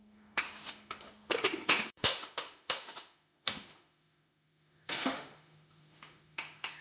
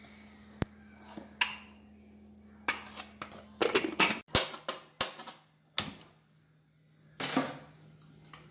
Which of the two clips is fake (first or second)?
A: first